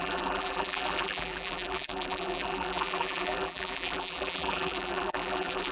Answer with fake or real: fake